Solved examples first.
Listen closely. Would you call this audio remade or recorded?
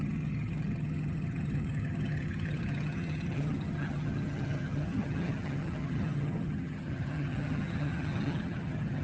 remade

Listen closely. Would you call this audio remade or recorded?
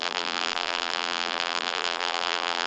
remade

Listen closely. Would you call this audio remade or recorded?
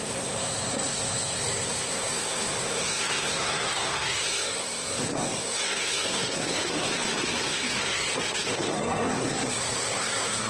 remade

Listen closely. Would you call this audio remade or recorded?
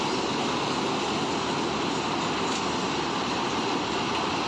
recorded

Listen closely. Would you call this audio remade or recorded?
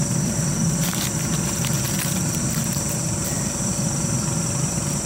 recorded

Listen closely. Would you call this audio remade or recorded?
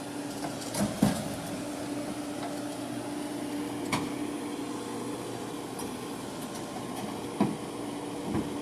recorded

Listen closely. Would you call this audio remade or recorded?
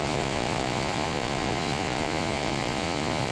remade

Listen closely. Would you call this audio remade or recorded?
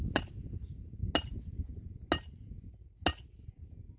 recorded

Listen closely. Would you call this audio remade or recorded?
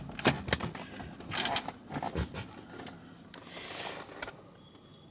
recorded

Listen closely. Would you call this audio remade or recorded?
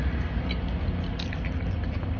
recorded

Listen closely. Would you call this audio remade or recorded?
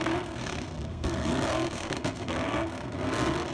remade